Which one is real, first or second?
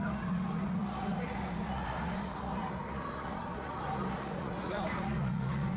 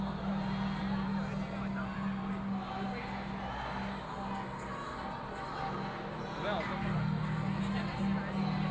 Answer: second